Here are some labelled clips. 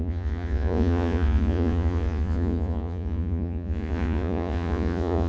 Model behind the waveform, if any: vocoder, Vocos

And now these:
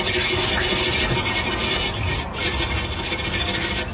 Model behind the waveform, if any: none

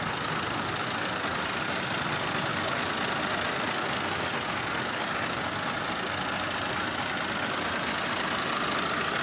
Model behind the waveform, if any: none